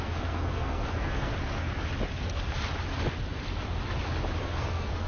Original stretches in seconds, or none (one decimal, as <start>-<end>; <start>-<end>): 1.3-4.4